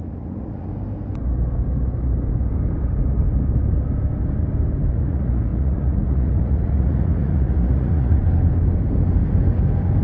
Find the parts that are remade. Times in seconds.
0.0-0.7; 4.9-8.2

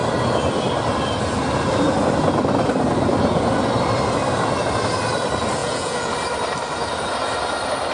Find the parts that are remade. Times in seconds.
5.6-6.1